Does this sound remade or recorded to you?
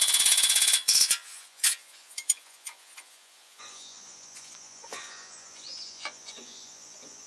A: remade